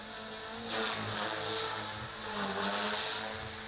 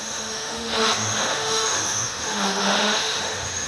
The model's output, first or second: second